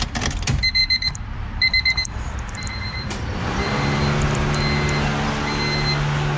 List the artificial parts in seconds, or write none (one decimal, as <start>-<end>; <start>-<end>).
0.8-4.6